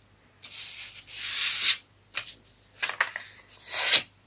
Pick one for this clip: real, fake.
real